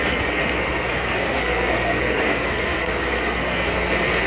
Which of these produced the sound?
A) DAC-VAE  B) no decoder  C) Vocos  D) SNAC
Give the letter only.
D